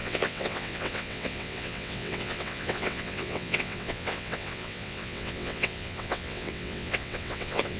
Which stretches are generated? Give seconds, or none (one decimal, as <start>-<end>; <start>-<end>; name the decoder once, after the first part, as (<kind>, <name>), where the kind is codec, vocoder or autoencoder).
0.0-7.8 (vocoder, WaveNeXt)